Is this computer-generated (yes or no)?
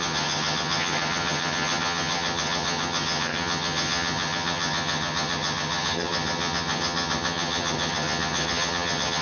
yes